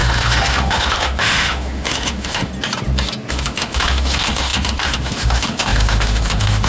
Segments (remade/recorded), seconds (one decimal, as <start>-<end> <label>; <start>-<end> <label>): 0.0-2.5 remade; 2.5-3.3 recorded; 3.3-6.7 remade